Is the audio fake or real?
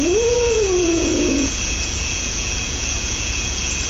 fake